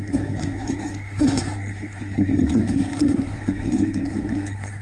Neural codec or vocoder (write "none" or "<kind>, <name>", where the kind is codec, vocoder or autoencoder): codec, SNAC